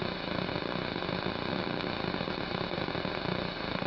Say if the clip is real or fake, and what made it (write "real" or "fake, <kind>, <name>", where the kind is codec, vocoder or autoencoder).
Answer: real